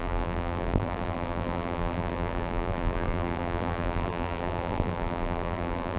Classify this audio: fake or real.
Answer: fake